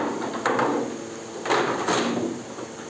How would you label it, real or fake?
real